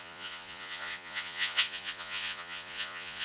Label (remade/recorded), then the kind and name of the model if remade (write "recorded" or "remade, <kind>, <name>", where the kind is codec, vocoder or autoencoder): remade, vocoder, Vocos